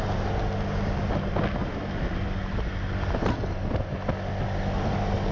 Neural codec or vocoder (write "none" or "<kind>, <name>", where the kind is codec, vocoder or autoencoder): none